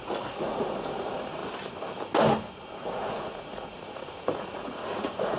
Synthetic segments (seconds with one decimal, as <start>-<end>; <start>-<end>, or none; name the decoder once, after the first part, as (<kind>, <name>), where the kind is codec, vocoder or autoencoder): 0.0-1.4 (vocoder, Vocos); 2.6-5.4